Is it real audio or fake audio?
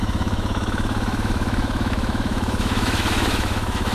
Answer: fake